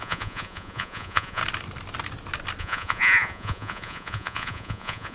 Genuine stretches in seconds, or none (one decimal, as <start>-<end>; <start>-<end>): 1.4-2.6